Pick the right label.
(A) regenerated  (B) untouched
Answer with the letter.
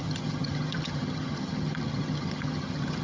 A